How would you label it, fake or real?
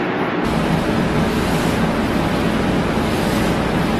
real